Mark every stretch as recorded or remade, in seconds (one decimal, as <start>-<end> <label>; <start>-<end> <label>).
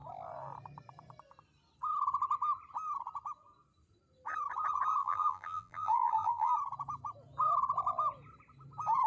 0.0-5.0 recorded; 5.0-6.5 remade; 6.5-9.1 recorded